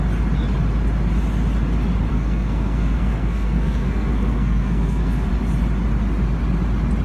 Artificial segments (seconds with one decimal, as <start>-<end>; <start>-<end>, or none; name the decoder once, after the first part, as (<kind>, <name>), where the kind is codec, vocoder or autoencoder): 2.1-5.3 (codec, SNAC)